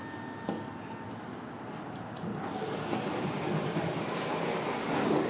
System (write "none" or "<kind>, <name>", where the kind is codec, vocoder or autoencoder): none